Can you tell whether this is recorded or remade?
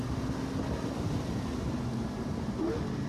recorded